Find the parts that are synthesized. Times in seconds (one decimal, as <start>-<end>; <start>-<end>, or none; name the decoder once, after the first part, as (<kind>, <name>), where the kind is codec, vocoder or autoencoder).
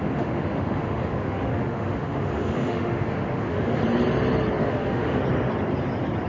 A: 0.0-3.8 (autoencoder, DAC-VAE); 4.6-5.2